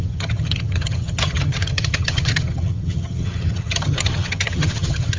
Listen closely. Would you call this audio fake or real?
fake